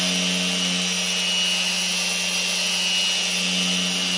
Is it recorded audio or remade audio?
recorded